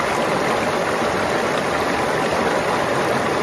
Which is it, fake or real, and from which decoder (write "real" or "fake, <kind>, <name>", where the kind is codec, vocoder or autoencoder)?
real